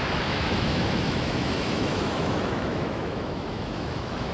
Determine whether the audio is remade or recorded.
remade